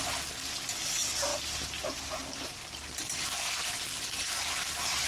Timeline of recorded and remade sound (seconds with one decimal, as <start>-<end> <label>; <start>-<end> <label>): 0.0-5.1 recorded

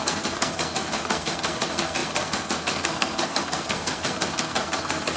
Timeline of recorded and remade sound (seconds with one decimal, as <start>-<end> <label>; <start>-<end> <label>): 0.0-5.2 remade

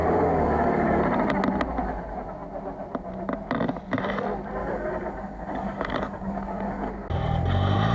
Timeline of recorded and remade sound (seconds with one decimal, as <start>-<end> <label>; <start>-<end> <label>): 0.0-1.0 remade; 1.0-4.6 recorded; 4.6-6.9 remade; 6.9-7.9 recorded